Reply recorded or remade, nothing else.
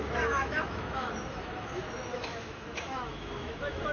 remade